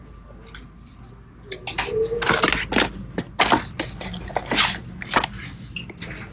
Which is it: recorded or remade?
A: recorded